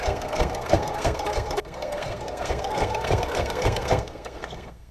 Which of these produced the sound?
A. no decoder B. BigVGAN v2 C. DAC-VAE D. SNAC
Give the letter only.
D